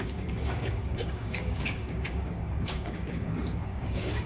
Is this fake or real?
fake